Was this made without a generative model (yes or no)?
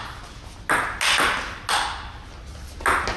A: yes